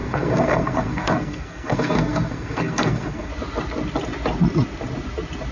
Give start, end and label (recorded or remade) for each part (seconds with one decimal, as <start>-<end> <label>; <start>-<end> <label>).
0.0-3.3 remade; 3.3-5.5 recorded